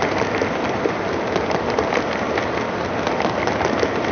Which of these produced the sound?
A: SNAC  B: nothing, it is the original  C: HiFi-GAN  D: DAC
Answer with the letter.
B